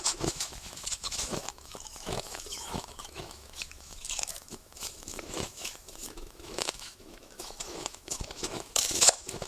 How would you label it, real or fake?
fake